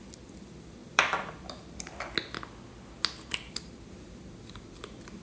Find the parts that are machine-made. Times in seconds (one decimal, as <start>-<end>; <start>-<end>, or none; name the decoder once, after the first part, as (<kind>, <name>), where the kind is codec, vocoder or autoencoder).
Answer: 0.8-1.3 (vocoder, BigVGAN v2)